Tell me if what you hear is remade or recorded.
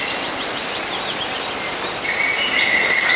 recorded